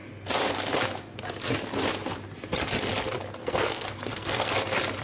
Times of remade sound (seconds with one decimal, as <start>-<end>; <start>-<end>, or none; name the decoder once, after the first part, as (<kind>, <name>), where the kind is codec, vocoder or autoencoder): 3.4-4.5 (codec, SNAC)